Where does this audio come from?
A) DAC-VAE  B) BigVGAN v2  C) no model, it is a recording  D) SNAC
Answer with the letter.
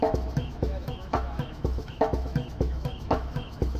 A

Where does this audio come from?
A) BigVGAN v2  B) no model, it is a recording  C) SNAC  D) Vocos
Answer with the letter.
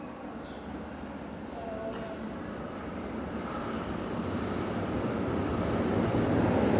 A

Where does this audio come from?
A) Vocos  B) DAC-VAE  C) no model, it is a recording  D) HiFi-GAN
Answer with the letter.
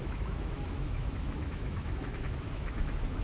B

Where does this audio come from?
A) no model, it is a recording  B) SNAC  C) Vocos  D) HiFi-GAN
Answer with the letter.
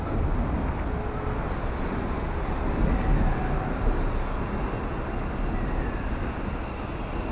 A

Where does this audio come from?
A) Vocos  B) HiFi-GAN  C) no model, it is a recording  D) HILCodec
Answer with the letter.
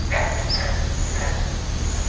C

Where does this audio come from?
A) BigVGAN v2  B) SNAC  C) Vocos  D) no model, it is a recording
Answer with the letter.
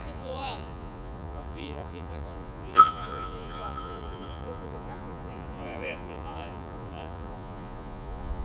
C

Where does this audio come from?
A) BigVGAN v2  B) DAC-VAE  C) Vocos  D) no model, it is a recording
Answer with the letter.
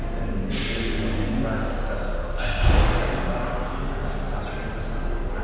D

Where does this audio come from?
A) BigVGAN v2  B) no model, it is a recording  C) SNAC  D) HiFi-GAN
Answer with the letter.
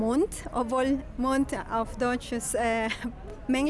B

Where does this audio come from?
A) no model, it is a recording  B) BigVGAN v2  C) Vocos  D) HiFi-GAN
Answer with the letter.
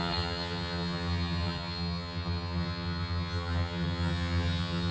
D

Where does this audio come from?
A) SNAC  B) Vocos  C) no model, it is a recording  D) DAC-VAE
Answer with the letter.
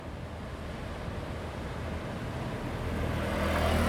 C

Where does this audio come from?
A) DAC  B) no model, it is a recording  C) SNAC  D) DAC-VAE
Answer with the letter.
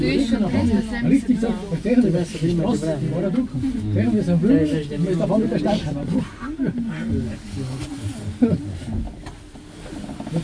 B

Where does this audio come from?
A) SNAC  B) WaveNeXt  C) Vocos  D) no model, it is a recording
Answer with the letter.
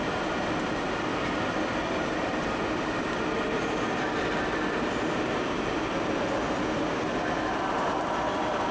D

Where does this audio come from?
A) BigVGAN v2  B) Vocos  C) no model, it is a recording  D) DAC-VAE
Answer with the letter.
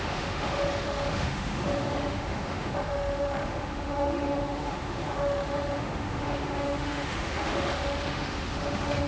D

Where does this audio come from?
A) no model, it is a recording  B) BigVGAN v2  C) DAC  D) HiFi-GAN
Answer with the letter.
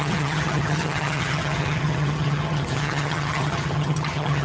D